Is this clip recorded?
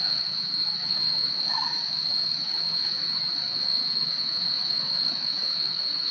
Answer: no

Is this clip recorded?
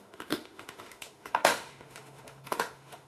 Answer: no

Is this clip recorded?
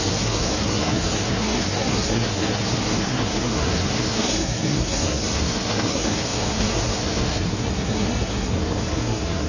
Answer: no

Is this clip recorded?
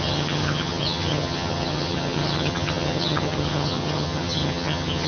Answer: no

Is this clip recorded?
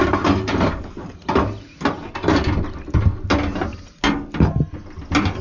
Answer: yes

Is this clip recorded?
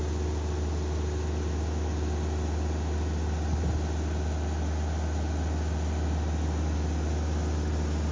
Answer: yes